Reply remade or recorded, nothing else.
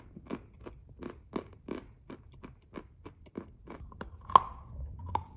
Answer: recorded